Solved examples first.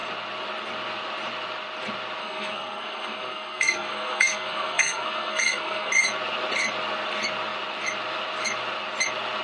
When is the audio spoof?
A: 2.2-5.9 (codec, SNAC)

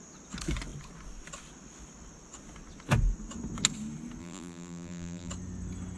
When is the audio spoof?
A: 4.2-5.3 (vocoder, BigVGAN v2)

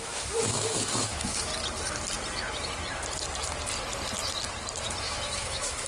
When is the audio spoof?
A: 0.0-1.5 (autoencoder, DAC-VAE); 5.0-5.9

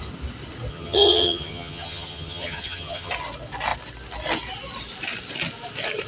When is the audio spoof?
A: 0.7-3.1 (vocoder, HiFi-GAN)

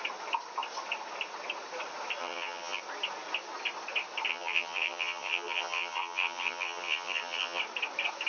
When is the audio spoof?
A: 2.2-2.8 (vocoder, HiFi-GAN); 4.3-7.6